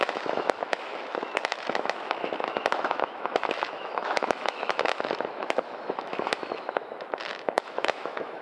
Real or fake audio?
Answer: fake